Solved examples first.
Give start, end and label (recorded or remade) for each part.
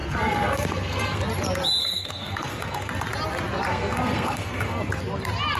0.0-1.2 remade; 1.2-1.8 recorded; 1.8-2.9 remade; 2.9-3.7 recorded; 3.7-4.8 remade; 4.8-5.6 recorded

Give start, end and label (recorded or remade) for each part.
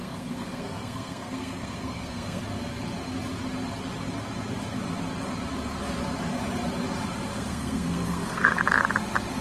0.0-2.4 remade; 2.4-7.3 recorded; 7.3-8.6 remade; 8.6-9.4 recorded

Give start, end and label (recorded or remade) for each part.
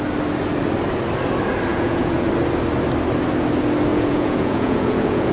0.0-1.7 recorded; 1.7-2.3 remade; 2.3-3.9 recorded; 3.9-5.3 remade